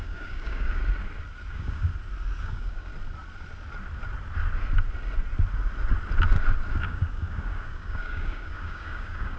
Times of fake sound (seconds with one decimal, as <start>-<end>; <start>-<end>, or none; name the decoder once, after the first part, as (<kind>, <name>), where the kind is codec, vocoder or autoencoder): 0.0-0.8 (codec, DAC); 1.5-1.9; 2.4-2.9; 6.7-9.4